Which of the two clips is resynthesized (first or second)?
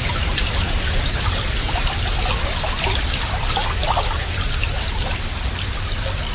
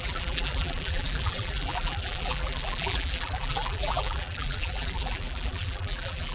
second